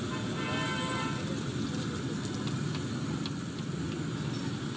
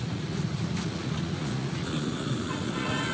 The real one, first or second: first